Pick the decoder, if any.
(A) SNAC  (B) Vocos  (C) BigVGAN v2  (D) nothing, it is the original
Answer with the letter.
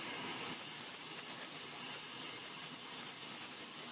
D